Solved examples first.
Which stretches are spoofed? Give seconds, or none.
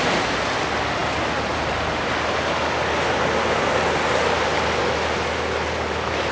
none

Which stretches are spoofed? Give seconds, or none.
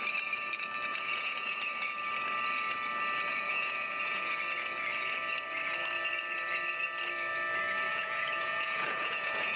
0.9-1.6 (vocoder, Vocos); 3.3-4.3; 7.9-9.6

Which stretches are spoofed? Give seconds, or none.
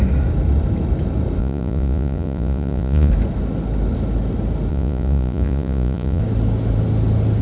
1.4-3.1 (vocoder, Vocos); 4.7-6.2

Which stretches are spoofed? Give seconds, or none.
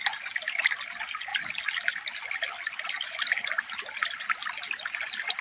none